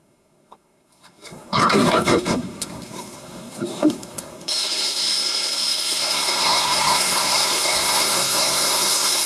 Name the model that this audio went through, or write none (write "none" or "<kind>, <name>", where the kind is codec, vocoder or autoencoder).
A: codec, SNAC